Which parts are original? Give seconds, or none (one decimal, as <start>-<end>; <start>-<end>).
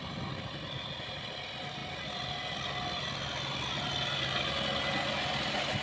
0.0-5.8